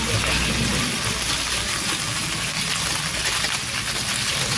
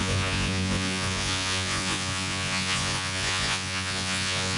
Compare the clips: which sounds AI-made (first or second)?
second